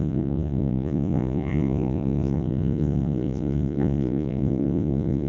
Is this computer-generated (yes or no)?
yes